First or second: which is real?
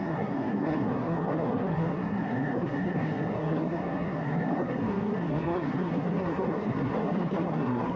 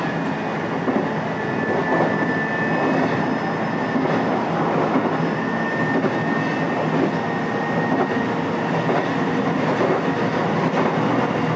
second